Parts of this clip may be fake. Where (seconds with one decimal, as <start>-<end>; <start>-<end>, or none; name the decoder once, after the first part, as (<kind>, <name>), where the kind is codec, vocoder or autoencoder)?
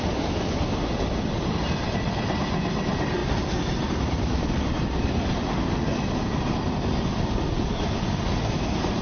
none